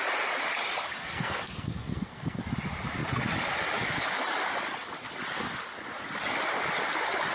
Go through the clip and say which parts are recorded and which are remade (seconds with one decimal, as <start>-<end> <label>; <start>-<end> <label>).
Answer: 0.0-1.0 recorded; 1.0-2.4 remade; 2.4-7.3 recorded